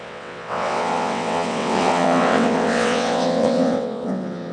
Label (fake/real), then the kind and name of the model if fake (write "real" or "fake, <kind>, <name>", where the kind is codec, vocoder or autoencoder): fake, vocoder, WaveNeXt